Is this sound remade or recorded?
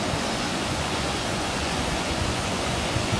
remade